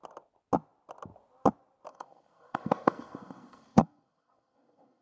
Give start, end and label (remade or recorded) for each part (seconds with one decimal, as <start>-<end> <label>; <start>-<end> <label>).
0.0-1.9 recorded; 1.9-5.0 remade